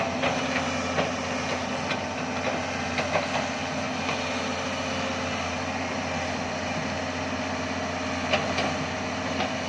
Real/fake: real